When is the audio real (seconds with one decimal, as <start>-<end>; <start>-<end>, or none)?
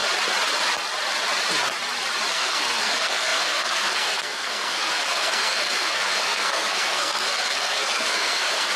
0.0-2.3